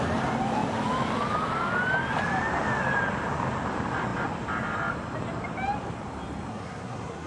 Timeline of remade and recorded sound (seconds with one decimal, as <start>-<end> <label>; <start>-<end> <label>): 0.0-6.5 recorded; 6.5-7.3 remade